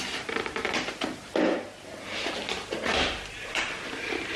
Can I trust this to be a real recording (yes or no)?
yes